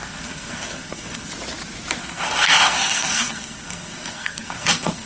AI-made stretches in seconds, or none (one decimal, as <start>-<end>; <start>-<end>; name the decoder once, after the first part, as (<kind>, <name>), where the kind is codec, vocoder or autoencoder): 0.0-1.3 (codec, SNAC); 2.0-5.1